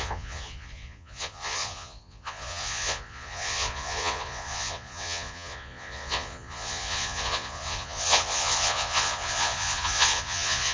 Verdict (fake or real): fake